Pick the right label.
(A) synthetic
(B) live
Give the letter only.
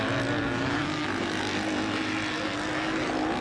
B